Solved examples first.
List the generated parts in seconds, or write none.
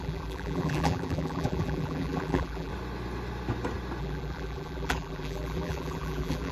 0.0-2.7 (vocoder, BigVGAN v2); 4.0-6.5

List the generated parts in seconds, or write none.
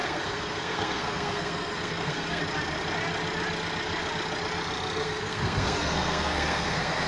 0.0-2.4 (codec, SNAC); 5.0-7.1